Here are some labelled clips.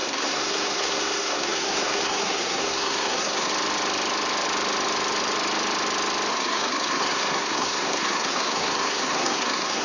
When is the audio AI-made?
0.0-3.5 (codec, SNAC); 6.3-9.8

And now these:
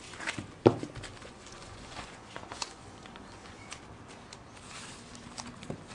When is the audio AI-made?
1.2-3.8 (vocoder, Vocos)